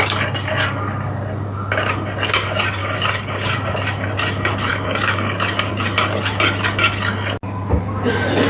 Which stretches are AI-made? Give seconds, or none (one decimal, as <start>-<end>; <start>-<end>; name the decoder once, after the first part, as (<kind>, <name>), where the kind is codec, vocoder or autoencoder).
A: 2.8-3.6 (codec, DAC); 4.7-5.7